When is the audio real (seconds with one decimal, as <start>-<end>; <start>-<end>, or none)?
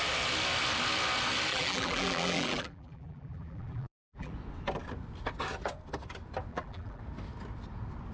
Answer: 0.0-1.5; 4.3-6.5; 7.0-8.1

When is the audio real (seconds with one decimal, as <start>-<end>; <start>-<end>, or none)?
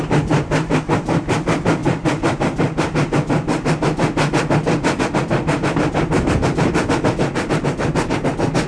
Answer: 0.0-8.7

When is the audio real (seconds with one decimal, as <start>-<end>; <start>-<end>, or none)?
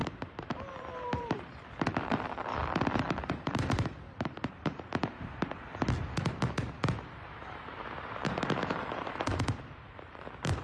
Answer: 2.5-3.3; 5.7-6.4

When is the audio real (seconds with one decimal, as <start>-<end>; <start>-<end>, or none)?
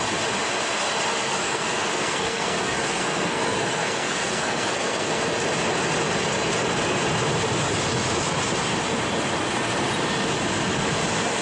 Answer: 0.0-1.3; 5.2-11.4